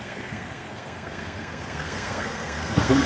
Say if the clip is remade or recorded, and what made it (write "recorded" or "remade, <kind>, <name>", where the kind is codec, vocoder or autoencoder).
remade, codec, SNAC